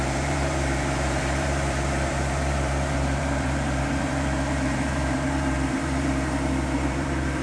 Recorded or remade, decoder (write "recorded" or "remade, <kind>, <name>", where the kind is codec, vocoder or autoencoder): remade, vocoder, BigVGAN v2